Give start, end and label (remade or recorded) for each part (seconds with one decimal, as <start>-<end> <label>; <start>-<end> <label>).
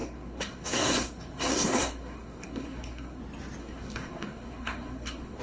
0.0-3.2 remade; 3.2-3.6 recorded; 3.6-5.4 remade